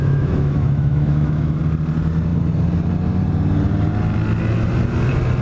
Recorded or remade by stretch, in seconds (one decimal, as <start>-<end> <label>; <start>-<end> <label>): 0.0-1.6 remade; 1.6-5.4 recorded